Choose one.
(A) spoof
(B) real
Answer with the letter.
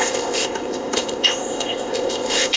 A